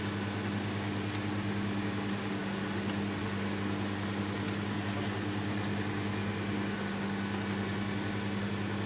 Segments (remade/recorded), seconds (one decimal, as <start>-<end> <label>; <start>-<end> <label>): 0.0-8.9 recorded